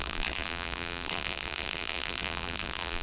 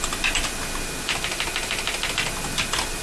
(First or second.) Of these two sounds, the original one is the second